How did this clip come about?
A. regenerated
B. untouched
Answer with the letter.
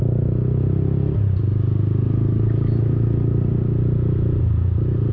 B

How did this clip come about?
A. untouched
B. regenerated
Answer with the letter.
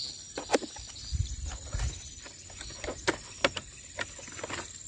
A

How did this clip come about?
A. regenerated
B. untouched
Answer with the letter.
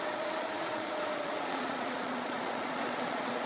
A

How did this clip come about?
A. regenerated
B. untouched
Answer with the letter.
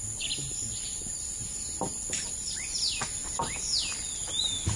B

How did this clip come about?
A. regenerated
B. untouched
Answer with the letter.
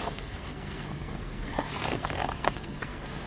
A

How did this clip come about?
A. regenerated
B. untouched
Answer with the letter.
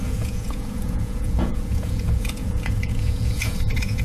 A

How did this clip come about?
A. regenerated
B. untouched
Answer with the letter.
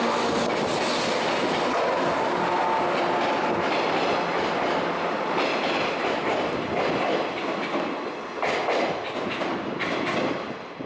B